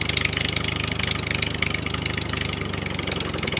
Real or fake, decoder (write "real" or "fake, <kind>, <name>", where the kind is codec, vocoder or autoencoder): real